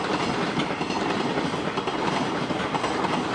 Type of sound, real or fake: real